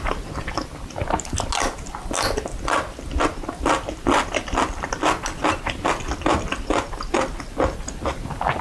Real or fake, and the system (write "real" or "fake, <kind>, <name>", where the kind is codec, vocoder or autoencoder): real